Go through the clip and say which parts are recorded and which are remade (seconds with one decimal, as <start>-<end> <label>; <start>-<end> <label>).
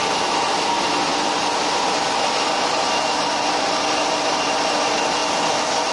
0.0-5.9 recorded